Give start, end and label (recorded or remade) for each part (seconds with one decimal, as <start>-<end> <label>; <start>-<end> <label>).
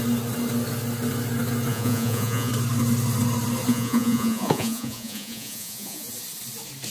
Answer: 0.0-1.7 recorded; 1.7-2.5 remade; 2.5-3.7 recorded; 3.7-6.1 remade; 6.1-6.9 recorded